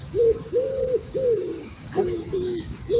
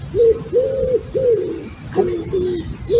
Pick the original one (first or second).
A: second